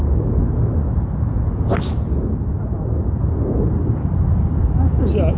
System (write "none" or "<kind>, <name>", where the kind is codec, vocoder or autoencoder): none